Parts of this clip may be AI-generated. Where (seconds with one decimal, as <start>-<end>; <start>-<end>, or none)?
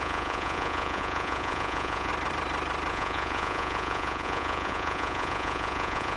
0.0-2.1; 2.9-6.2